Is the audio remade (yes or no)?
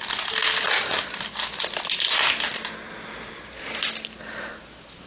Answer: no